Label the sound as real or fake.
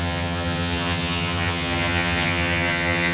fake